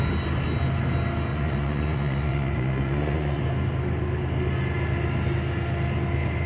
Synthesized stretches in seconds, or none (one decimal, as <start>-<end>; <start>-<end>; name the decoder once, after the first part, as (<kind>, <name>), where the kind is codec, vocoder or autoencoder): 1.3-3.4 (vocoder, Vocos)